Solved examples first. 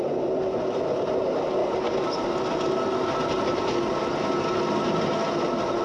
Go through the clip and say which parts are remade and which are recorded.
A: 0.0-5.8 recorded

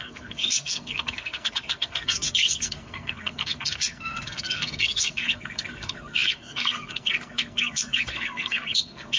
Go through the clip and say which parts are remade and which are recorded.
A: 0.0-9.2 remade

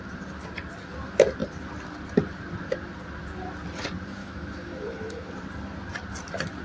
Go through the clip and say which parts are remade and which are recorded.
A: 0.0-4.2 recorded; 4.2-5.3 remade; 5.3-6.6 recorded